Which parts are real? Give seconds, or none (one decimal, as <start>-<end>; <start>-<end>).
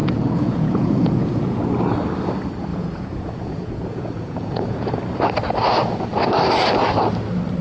1.6-2.7; 4.9-7.6